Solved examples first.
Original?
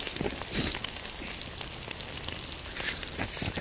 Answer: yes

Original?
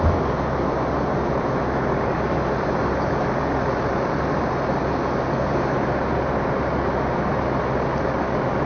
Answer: yes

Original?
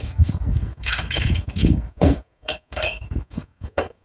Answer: no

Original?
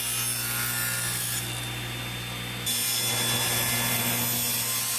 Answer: yes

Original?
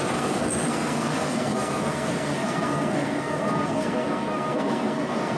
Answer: no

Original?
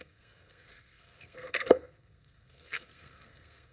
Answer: no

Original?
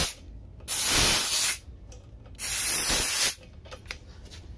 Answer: yes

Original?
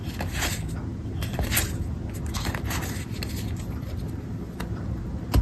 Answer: yes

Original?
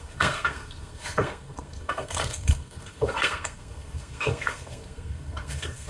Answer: no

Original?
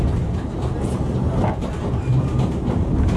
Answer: yes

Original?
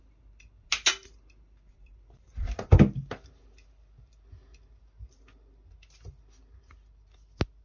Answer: yes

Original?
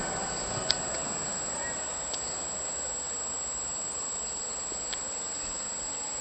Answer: yes